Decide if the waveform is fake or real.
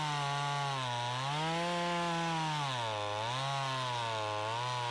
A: real